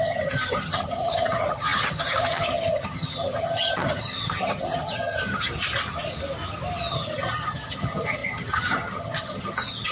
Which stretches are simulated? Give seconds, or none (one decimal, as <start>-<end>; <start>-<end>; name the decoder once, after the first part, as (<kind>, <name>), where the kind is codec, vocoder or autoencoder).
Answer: 0.0-5.5 (vocoder, HiFi-GAN); 6.9-9.9